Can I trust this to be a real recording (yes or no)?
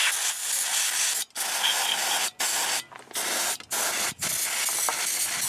yes